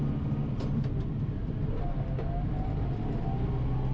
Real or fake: real